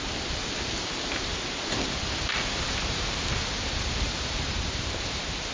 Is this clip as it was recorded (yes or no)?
no